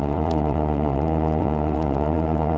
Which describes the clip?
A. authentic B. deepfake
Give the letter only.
B